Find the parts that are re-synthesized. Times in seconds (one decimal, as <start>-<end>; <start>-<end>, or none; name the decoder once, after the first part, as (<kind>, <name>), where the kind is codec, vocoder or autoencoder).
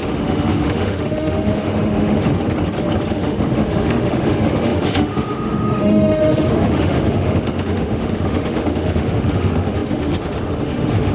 0.0-2.3 (autoencoder, DAC-VAE); 3.1-11.1